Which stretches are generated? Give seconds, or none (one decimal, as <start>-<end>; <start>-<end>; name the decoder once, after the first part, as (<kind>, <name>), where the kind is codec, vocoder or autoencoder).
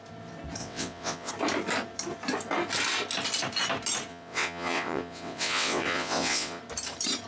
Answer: 0.6-1.3 (vocoder, WaveNeXt); 4.1-6.6